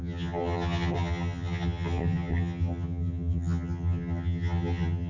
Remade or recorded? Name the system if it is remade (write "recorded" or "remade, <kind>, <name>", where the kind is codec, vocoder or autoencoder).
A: remade, vocoder, HiFi-GAN